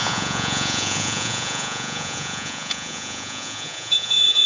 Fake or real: fake